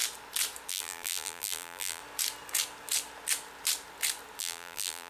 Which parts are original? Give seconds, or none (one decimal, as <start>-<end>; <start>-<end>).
0.0-0.7; 2.0-4.4